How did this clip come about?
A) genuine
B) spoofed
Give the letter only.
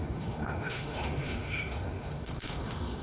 B